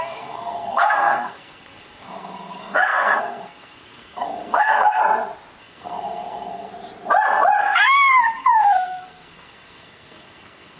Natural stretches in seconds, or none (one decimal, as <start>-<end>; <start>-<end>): 5.0-5.6; 6.7-7.6